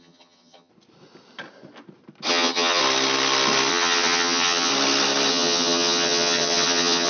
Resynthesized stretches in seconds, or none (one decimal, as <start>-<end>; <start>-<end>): 0.0-0.7; 2.3-2.8; 3.7-4.7; 5.3-7.1